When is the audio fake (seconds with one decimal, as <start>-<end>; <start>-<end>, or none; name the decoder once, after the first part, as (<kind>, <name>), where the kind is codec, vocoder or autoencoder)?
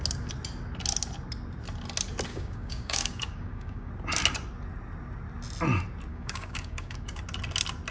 2.3-3.9 (codec, DAC); 6.1-7.2